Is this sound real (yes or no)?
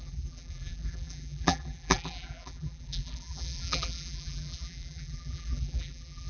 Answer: no